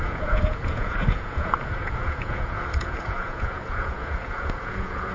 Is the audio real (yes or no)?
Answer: no